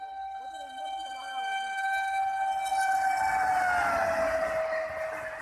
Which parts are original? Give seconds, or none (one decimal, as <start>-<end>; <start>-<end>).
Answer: 0.0-5.4